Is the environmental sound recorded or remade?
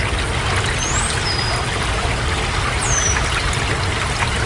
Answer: recorded